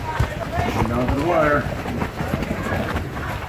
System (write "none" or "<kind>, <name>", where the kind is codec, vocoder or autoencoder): none